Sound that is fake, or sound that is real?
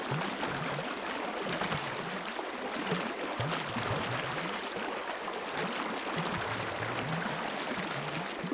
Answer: real